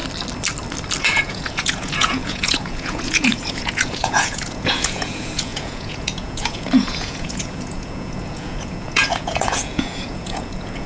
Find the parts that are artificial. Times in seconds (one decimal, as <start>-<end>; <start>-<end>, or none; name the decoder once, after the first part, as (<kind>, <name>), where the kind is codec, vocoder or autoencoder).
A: 1.0-10.9 (vocoder, Vocos)